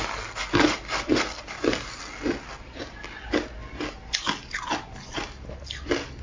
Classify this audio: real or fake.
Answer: real